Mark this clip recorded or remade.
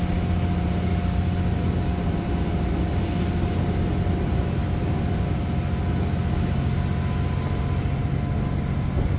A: recorded